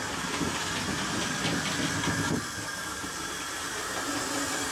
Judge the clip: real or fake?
real